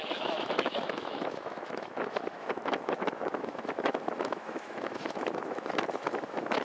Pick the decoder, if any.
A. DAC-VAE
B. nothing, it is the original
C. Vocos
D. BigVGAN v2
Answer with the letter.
A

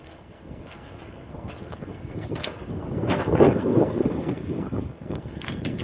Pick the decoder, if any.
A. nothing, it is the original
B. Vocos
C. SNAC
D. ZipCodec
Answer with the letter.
C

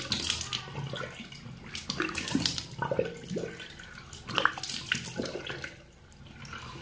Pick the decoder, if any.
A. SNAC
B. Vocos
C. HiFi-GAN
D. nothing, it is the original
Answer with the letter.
D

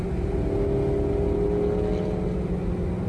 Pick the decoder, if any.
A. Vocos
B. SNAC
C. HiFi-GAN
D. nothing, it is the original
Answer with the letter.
D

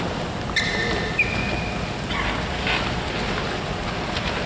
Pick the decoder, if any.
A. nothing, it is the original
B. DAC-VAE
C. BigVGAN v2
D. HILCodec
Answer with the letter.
A